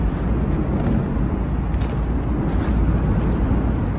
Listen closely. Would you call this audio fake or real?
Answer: real